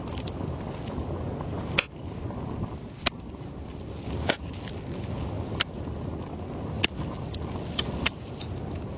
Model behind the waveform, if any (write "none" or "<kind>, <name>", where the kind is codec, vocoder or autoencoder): none